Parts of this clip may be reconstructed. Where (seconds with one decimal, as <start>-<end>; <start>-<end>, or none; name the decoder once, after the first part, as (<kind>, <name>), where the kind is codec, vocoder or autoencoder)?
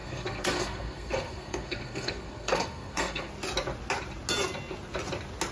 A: 0.0-3.3 (codec, SNAC)